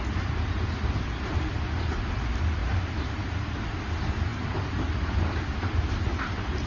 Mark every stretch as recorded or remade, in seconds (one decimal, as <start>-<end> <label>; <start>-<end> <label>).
0.0-2.6 recorded; 2.6-3.8 remade; 3.8-6.7 recorded

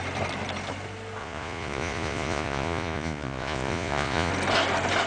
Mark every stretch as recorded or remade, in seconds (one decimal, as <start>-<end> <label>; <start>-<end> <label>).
0.0-1.2 recorded; 1.2-4.3 remade; 4.3-5.1 recorded

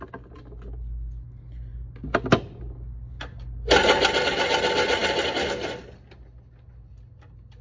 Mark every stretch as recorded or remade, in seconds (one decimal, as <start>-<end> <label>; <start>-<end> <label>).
0.0-7.6 recorded

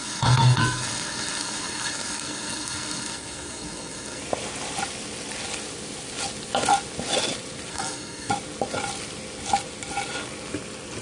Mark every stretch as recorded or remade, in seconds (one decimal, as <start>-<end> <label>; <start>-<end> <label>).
0.0-4.2 remade; 4.2-7.7 recorded; 7.7-8.3 remade; 8.3-11.0 recorded